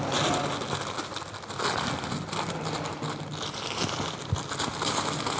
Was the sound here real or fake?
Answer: real